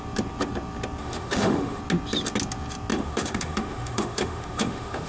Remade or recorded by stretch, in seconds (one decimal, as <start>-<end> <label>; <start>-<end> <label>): 0.0-1.0 recorded; 1.0-1.8 remade; 1.8-2.9 recorded; 2.9-5.1 remade